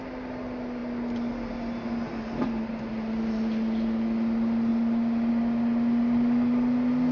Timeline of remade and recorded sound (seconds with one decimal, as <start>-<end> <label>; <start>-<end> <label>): 0.0-7.1 recorded